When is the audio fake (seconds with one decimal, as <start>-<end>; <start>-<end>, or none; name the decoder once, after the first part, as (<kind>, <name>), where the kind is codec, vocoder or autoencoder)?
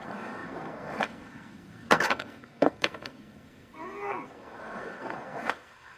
0.0-6.0 (codec, SNAC)